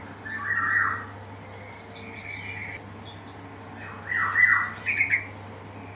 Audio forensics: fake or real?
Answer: real